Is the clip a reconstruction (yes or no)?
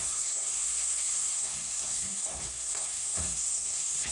yes